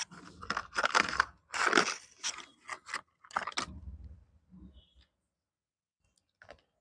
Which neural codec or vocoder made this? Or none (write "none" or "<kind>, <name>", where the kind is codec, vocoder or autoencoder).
none